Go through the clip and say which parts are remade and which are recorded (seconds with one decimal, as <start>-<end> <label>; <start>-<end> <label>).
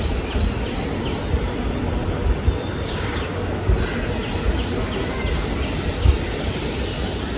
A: 0.0-2.7 recorded; 2.7-3.6 remade; 3.6-7.4 recorded